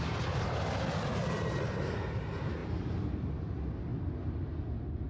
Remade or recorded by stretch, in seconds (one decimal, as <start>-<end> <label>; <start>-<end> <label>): 0.0-5.1 recorded